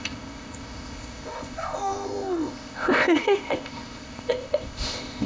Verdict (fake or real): fake